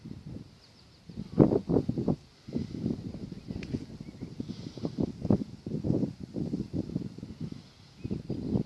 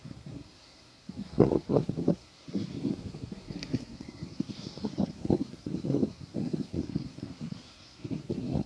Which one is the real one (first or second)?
first